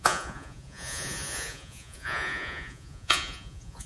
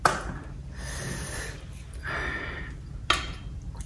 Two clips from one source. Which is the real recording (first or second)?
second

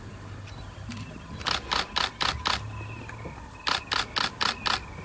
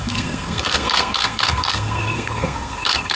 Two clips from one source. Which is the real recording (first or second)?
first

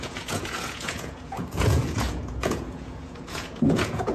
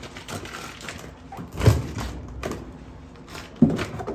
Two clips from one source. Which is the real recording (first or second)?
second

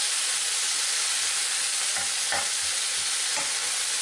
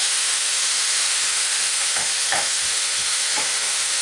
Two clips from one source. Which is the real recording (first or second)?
first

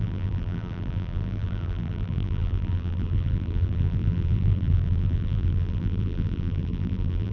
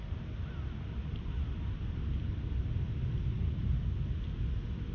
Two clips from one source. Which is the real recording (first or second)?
second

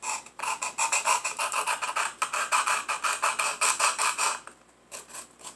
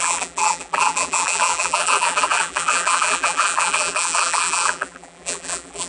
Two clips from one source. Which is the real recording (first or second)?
first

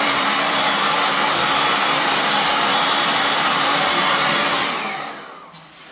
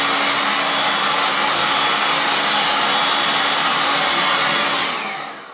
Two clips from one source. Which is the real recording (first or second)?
second